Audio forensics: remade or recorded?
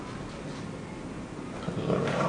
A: recorded